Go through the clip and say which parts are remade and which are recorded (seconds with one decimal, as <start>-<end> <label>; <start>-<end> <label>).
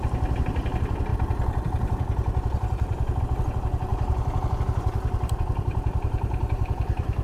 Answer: 0.0-7.2 remade